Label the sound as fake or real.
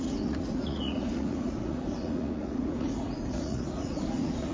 fake